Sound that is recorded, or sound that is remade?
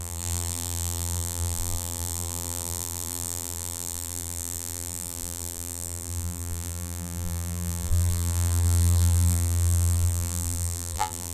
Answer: remade